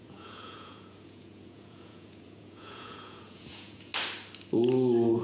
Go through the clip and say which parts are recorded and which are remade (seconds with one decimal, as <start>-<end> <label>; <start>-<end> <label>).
0.0-3.9 remade; 3.9-5.2 recorded